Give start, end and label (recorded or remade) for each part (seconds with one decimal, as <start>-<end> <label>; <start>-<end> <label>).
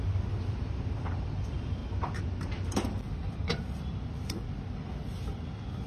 0.0-1.8 remade; 1.8-2.4 recorded; 2.4-5.9 remade